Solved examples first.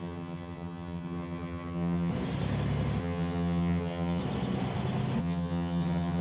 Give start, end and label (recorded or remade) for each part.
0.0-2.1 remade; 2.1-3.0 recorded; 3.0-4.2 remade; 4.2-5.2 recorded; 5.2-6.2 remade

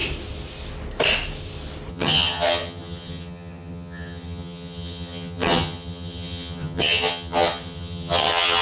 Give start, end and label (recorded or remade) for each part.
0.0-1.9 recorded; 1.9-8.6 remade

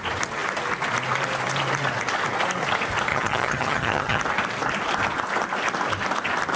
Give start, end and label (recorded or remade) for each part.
0.0-3.1 recorded; 3.1-4.2 remade; 4.2-6.6 recorded

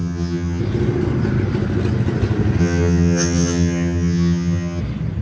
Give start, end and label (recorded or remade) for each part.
0.0-0.6 remade; 0.6-2.6 recorded; 2.6-4.8 remade; 4.8-5.2 recorded

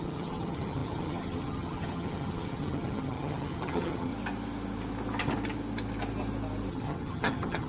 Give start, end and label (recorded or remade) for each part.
0.0-4.1 remade; 4.1-6.7 recorded; 6.7-7.7 remade